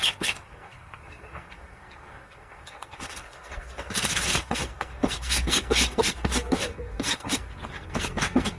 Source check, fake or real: fake